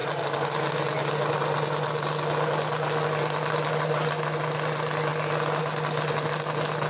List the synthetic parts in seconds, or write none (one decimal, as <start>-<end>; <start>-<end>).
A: none